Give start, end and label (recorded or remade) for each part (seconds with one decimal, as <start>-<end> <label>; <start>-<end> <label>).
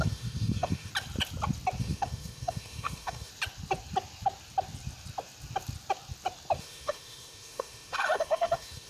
0.0-0.9 remade; 0.9-1.8 recorded; 1.8-3.3 remade; 3.3-6.6 recorded; 6.6-8.9 remade